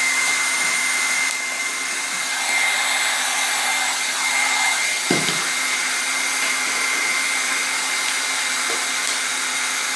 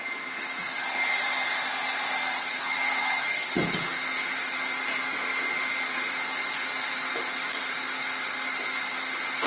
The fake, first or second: first